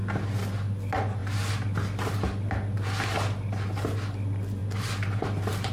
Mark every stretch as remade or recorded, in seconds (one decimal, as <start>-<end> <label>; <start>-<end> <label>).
0.0-4.6 recorded; 4.6-5.7 remade